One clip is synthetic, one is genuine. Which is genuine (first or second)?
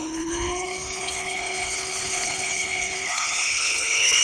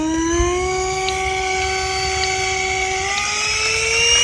second